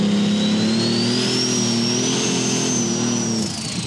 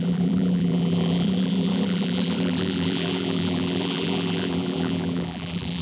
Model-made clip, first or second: second